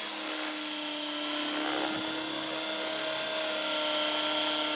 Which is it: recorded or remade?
recorded